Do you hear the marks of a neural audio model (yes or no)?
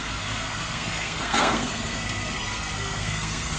yes